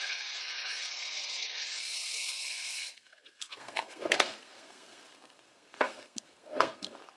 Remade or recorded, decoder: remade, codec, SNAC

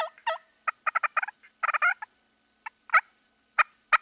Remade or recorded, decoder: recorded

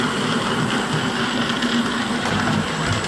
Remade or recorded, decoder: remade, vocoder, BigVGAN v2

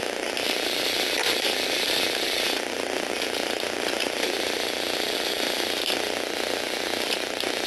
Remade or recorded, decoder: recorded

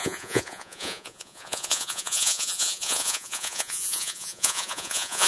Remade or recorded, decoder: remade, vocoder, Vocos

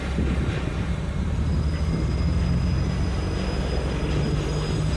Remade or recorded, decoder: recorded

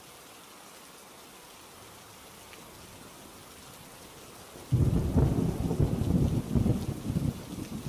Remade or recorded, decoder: recorded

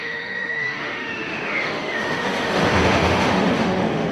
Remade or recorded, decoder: remade, autoencoder, DAC-VAE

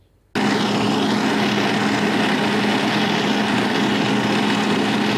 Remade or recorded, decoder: recorded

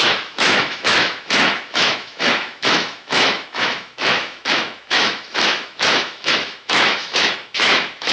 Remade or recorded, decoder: remade, autoencoder, DAC-VAE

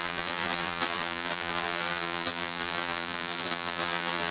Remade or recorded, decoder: remade, vocoder, BigVGAN v2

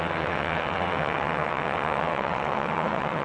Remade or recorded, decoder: remade, vocoder, WaveNeXt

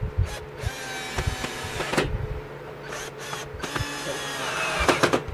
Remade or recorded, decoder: recorded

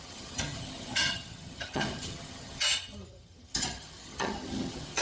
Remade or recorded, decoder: remade, vocoder, HiFi-GAN